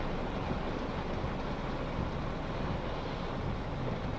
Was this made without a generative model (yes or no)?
yes